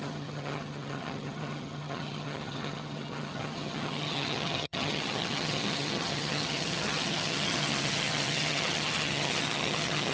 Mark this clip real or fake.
fake